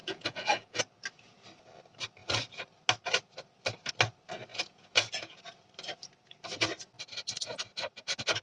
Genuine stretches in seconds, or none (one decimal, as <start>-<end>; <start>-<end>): 0.8-4.5; 5.4-8.4